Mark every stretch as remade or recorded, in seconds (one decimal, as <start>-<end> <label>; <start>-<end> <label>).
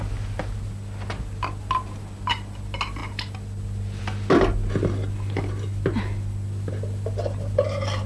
0.0-8.1 recorded